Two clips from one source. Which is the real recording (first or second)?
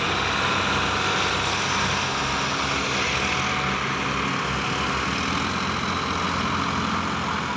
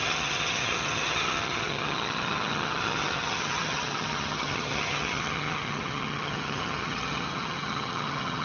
first